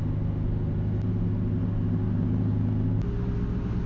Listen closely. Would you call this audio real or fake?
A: real